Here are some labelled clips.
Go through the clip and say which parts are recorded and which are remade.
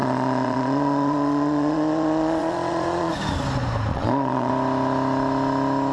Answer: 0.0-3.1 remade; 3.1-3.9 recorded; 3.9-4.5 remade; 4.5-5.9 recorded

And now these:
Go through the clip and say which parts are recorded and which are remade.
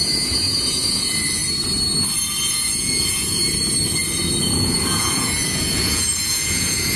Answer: 0.0-1.4 remade; 1.4-2.5 recorded; 2.5-3.4 remade; 3.4-4.4 recorded; 4.4-7.0 remade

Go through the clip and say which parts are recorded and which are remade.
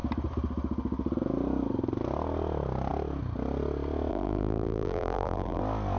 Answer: 0.0-4.1 recorded; 4.1-5.6 remade; 5.6-6.0 recorded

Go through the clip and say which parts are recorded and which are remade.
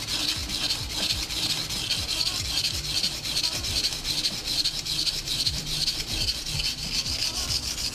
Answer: 0.0-7.9 recorded